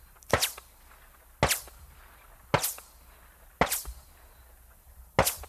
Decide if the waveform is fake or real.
real